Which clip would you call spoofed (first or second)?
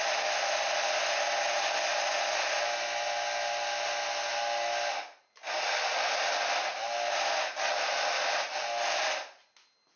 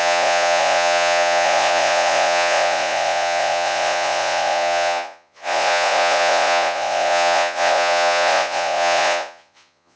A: second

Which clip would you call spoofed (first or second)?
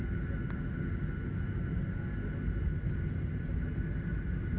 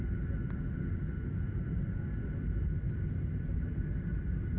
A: second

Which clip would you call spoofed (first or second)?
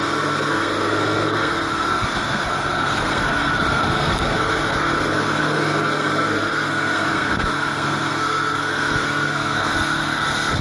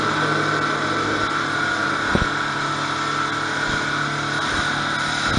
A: first